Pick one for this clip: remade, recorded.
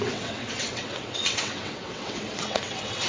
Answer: remade